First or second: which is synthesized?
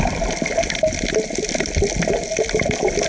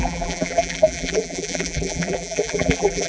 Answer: second